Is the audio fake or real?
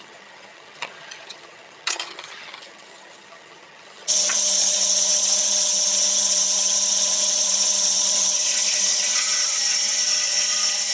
fake